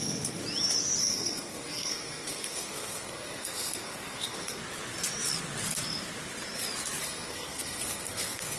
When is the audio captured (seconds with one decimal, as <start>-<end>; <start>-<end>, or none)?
0.4-1.0; 4.6-7.0